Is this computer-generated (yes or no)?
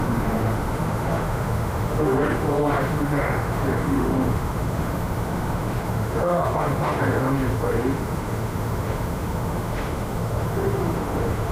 yes